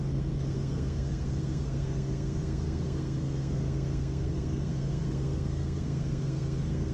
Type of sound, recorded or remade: remade